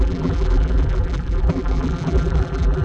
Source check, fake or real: fake